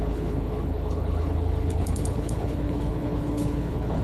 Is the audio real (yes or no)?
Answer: no